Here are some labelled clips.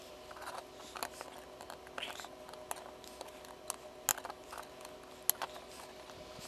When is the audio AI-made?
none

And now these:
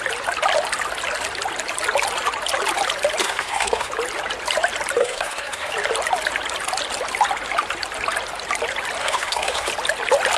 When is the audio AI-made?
3.2-3.9 (codec, SNAC); 5.0-5.7; 9.0-9.7